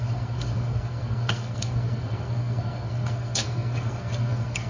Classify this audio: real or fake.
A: fake